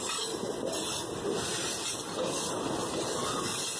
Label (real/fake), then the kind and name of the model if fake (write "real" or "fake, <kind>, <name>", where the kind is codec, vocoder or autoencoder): real